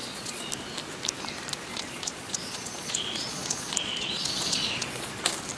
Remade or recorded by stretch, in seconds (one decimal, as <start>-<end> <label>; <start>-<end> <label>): 0.0-0.5 remade; 0.5-1.7 recorded; 1.7-5.1 remade; 5.1-5.6 recorded